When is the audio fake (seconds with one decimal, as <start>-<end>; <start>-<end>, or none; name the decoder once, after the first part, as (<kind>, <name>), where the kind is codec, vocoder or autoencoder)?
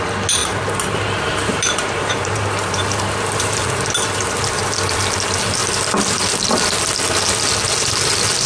0.4-3.7 (vocoder, BigVGAN v2)